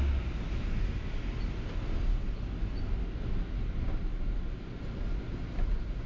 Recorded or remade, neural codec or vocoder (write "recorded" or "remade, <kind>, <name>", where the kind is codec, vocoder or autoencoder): recorded